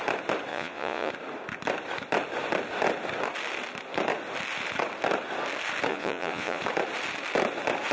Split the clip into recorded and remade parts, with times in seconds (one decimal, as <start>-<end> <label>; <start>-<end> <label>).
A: 0.0-0.5 recorded; 0.5-1.1 remade; 1.1-5.9 recorded; 5.9-6.6 remade; 6.6-7.9 recorded